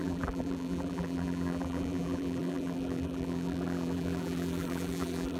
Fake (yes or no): yes